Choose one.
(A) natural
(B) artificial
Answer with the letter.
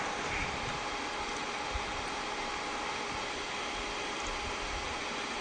A